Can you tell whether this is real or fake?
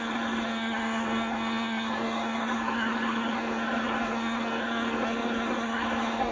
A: fake